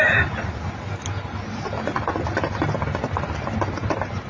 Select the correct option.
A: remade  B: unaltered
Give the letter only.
B